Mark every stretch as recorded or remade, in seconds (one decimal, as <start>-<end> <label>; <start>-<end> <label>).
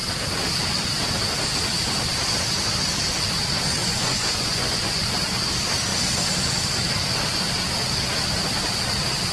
0.0-3.8 recorded; 3.8-5.2 remade; 5.2-9.3 recorded